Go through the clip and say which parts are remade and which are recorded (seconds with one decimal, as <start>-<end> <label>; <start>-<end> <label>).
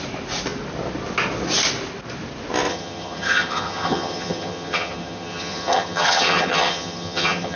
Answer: 0.0-2.7 recorded; 2.7-7.6 remade